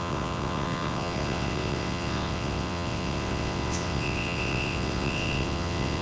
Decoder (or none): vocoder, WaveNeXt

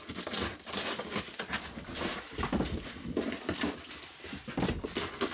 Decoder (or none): vocoder, BigVGAN v2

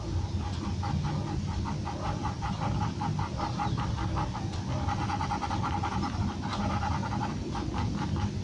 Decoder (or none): none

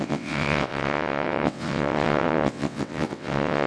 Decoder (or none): vocoder, WaveNeXt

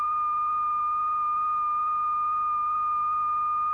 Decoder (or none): none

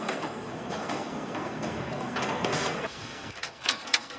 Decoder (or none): codec, SNAC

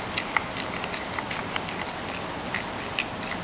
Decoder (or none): none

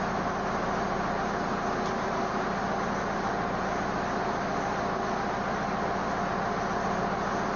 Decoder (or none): none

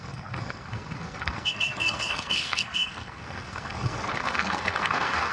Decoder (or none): codec, SNAC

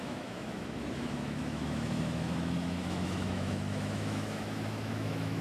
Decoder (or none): autoencoder, DAC-VAE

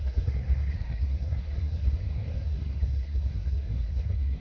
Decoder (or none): codec, SNAC